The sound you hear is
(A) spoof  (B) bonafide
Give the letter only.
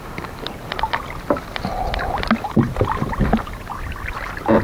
B